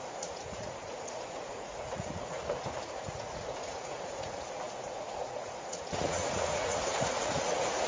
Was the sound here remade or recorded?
remade